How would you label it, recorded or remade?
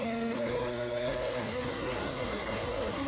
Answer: remade